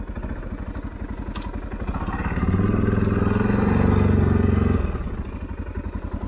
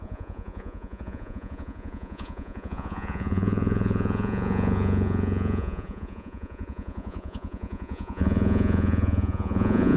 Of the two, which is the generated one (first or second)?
second